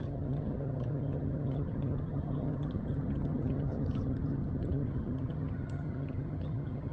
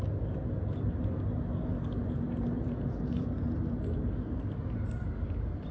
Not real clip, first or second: first